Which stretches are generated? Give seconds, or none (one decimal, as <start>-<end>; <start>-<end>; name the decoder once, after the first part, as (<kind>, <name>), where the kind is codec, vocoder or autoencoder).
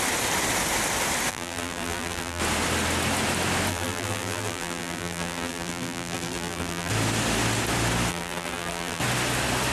1.3-2.4 (vocoder, BigVGAN v2); 3.7-6.9; 8.1-9.0